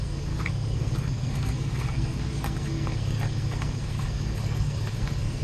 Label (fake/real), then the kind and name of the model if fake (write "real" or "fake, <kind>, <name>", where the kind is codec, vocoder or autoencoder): fake, codec, SNAC